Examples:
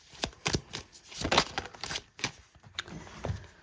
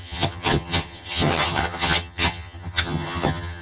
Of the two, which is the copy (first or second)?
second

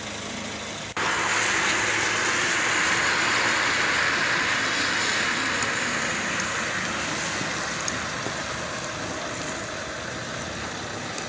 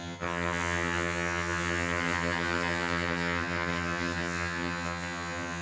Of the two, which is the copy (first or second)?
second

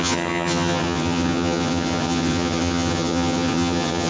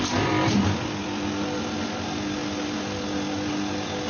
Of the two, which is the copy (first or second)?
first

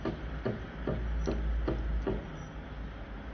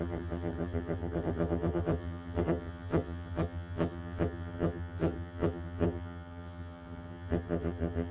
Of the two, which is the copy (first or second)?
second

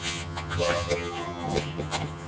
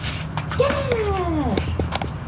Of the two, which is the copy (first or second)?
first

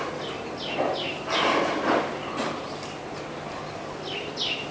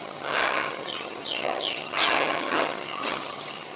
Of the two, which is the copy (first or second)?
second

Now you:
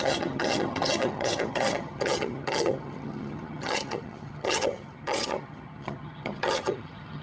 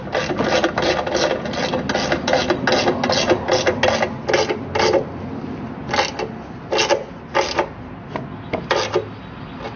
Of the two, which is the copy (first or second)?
first